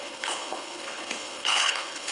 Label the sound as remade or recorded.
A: remade